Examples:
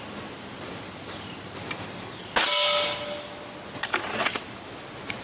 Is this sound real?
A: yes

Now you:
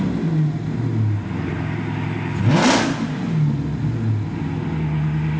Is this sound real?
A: yes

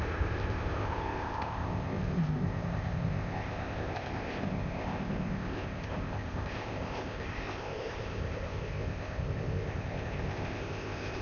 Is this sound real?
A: no